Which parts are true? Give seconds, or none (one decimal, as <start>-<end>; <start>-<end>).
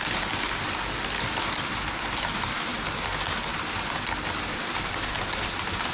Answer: 0.0-5.9